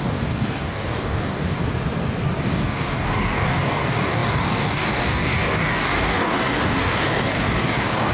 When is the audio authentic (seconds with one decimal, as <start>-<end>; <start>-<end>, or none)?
1.6-2.4